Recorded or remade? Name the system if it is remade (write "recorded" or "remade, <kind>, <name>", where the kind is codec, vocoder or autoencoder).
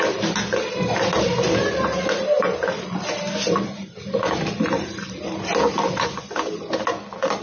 recorded